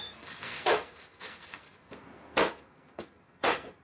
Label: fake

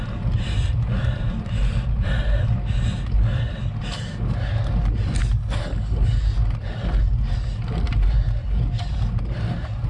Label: real